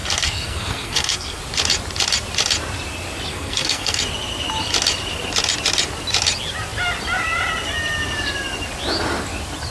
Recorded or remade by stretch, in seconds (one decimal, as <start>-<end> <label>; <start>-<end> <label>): 0.0-1.4 remade; 1.4-3.3 recorded; 3.3-4.0 remade; 4.0-9.7 recorded